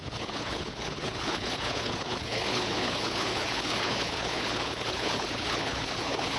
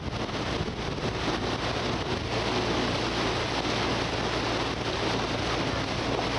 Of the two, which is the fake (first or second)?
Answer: first